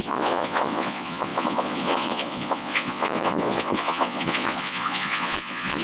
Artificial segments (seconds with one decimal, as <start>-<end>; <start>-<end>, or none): 0.0-5.8